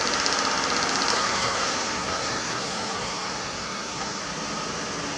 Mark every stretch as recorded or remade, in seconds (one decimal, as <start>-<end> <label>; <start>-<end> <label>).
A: 0.0-1.1 recorded; 1.1-4.2 remade; 4.2-5.2 recorded